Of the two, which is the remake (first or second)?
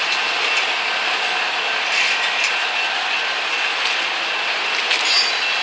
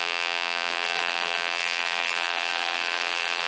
second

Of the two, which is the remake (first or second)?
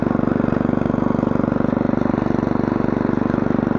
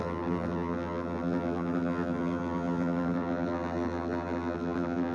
second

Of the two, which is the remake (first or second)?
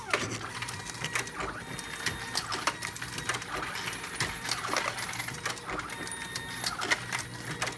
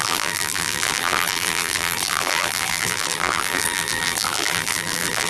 second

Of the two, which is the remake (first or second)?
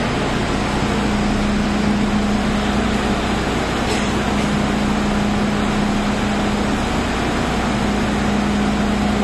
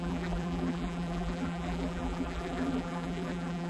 second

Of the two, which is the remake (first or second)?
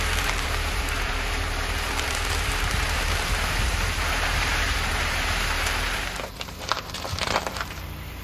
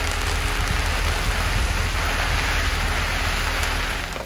first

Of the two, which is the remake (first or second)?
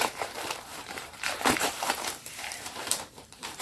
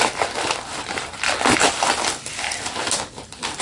first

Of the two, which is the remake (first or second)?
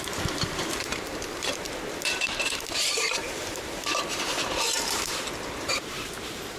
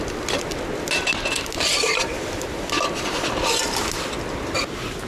first